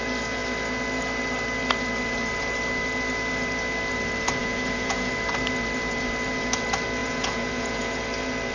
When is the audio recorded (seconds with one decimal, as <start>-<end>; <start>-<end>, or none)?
0.0-4.4; 5.1-7.0; 8.0-8.5